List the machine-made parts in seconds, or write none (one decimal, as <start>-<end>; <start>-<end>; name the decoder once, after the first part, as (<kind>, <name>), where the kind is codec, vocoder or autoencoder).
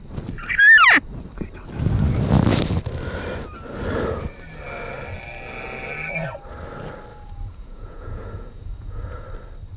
7.1-9.2 (vocoder, Vocos)